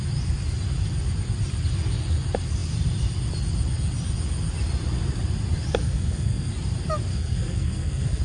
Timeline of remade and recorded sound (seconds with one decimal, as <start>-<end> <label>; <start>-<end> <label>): 0.0-5.8 recorded; 5.8-6.5 remade; 6.5-7.1 recorded; 7.1-8.2 remade